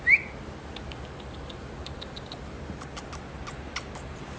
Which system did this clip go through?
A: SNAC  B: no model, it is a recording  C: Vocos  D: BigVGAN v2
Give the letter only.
B